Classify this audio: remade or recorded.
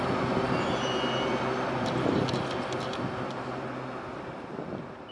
recorded